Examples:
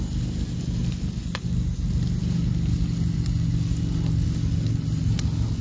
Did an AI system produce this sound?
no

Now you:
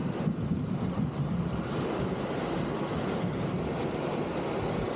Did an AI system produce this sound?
no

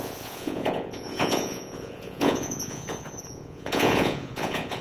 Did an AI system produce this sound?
yes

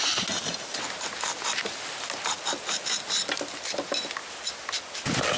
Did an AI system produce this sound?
no